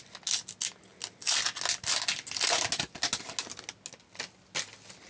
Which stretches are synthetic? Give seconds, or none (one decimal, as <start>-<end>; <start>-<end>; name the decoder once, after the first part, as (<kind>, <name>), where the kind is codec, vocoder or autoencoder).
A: none